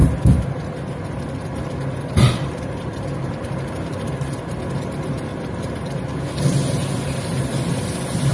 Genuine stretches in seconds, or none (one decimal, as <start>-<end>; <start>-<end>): 0.0-8.3